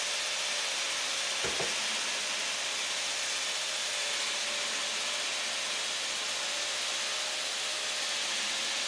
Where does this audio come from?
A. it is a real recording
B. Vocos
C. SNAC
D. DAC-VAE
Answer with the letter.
A